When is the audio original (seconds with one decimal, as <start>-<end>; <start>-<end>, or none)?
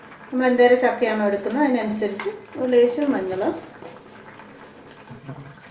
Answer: 0.0-5.2